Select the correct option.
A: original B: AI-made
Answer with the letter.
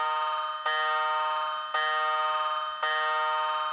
A